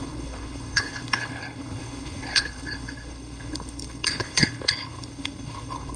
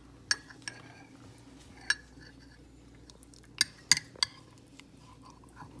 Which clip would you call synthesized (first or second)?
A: first